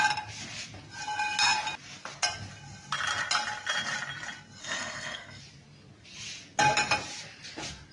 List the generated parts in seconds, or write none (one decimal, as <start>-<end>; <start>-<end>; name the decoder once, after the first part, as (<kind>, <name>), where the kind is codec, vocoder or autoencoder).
4.6-5.4 (codec, SNAC)